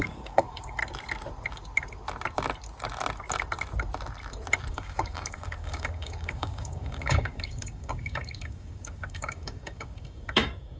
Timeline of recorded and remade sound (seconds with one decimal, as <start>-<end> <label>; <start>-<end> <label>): 0.0-0.8 remade; 0.8-4.7 recorded; 4.7-10.8 remade